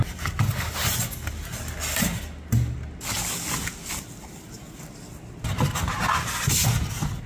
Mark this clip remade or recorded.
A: recorded